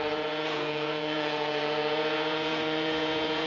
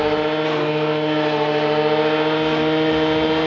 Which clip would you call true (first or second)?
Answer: second